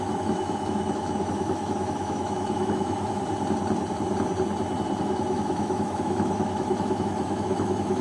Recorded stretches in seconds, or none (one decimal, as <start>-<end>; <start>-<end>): 3.3-5.0